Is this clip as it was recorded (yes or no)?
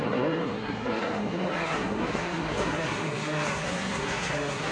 no